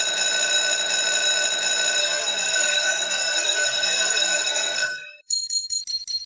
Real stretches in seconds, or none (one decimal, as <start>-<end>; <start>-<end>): 0.0-2.0; 5.8-6.3